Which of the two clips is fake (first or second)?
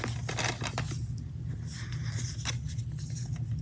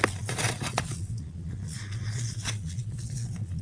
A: second